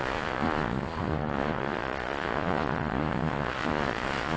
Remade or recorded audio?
remade